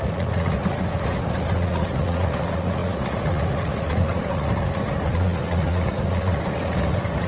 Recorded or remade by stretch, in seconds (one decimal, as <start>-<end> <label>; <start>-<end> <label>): 0.0-7.3 remade